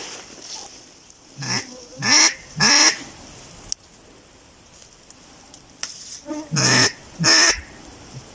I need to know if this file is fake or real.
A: real